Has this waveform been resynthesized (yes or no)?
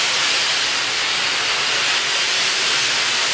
no